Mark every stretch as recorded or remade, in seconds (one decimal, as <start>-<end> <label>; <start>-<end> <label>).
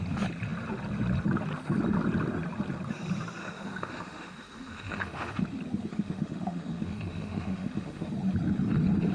0.0-3.4 recorded; 3.4-5.4 remade; 5.4-5.9 recorded; 5.9-8.1 remade; 8.1-9.1 recorded